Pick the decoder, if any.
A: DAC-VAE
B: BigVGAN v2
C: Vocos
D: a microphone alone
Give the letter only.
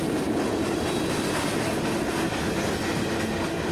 D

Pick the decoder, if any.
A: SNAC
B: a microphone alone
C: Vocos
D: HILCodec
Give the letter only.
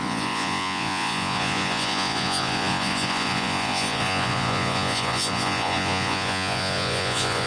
C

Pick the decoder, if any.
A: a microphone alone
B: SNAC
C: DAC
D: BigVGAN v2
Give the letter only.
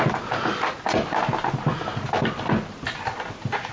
A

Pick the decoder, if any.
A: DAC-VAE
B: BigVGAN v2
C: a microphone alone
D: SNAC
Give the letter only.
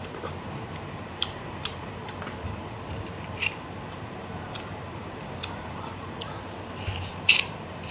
B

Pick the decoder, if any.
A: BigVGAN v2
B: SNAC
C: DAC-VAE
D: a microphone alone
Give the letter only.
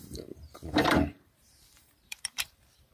A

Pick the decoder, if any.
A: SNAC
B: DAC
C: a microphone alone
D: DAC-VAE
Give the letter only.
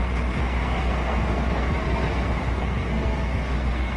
A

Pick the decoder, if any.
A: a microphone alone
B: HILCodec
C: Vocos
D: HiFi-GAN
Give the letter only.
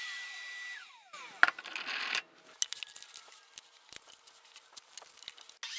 A